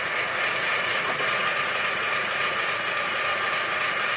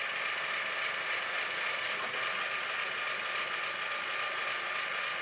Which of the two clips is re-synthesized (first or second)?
first